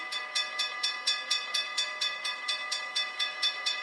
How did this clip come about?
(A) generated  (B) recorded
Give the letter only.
A